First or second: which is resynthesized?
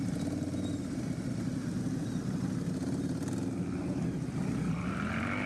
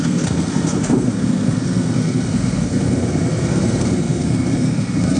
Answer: second